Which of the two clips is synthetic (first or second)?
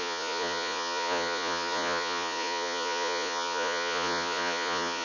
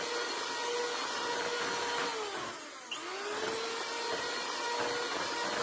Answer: first